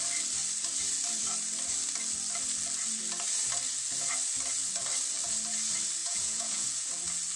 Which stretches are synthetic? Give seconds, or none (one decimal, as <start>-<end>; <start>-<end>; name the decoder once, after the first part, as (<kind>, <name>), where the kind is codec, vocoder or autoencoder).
6.0-6.9 (vocoder, Vocos)